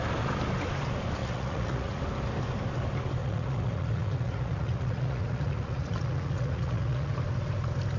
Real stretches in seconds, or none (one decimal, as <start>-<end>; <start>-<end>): 0.0-1.2; 2.0-3.2; 7.1-8.0